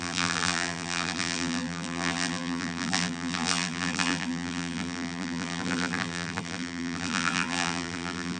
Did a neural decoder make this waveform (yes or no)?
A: yes